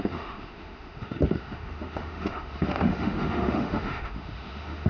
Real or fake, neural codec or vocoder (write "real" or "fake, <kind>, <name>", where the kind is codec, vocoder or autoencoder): fake, autoencoder, DAC-VAE